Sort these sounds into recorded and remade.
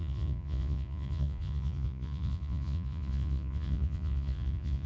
remade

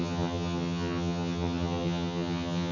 remade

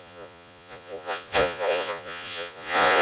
remade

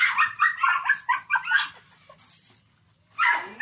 recorded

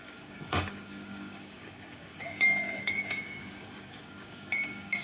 remade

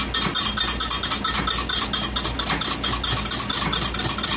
recorded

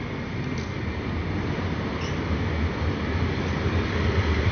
recorded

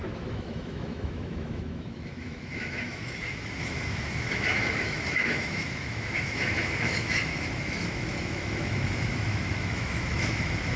remade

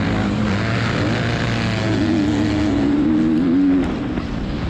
recorded